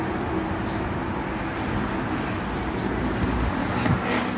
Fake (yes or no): no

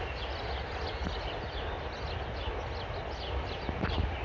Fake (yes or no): no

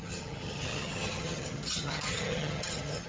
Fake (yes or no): yes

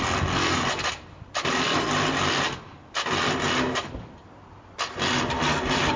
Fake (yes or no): no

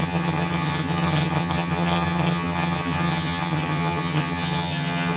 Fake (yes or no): yes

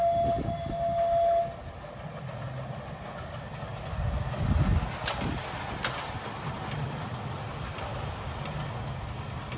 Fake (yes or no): no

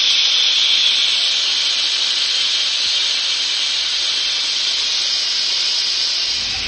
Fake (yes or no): no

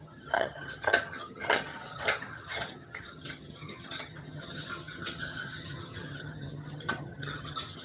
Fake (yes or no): yes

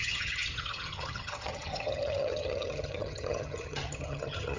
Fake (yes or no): yes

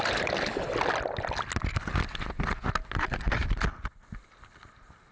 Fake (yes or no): no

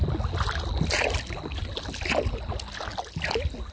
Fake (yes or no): no